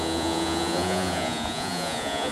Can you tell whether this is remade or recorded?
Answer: remade